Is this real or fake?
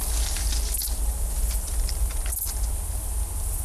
real